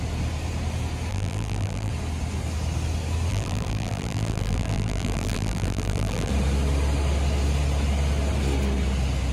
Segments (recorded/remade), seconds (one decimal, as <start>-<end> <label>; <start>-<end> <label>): 0.0-1.1 recorded; 1.1-1.9 remade; 1.9-3.3 recorded; 3.3-6.3 remade; 6.3-9.3 recorded